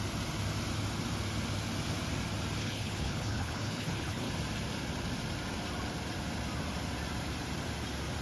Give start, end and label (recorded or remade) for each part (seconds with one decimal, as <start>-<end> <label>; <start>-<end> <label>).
0.0-2.6 recorded; 2.6-4.3 remade; 4.3-8.2 recorded